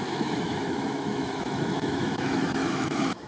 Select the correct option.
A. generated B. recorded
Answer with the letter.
A